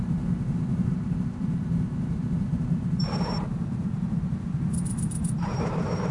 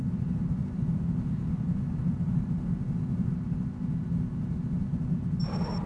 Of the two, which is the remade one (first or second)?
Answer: first